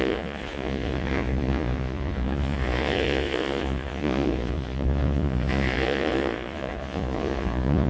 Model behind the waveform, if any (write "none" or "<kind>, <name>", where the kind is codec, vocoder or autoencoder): vocoder, Vocos